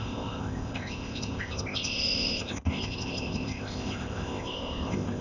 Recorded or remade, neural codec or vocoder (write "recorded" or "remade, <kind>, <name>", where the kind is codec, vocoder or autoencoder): remade, codec, ZipCodec